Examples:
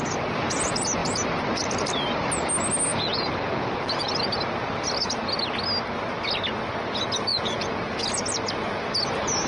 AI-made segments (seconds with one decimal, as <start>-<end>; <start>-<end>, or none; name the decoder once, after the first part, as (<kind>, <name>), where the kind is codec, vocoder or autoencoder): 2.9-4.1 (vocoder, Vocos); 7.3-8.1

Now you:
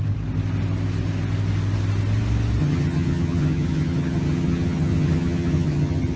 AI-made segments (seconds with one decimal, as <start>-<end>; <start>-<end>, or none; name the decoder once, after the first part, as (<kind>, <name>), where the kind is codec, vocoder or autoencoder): 2.6-6.2 (vocoder, HiFi-GAN)

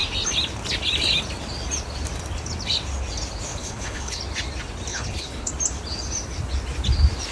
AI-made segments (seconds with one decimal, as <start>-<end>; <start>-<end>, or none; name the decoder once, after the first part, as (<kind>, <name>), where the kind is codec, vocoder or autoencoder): 3.5-4.2 (codec, HILCodec); 4.9-5.5